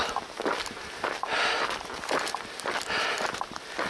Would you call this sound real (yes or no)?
yes